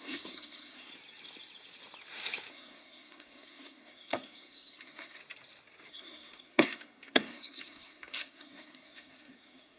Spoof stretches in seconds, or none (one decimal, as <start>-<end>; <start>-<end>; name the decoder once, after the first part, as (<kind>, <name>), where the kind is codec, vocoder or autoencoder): 0.0-0.9 (codec, SNAC); 2.5-5.2; 5.9-9.8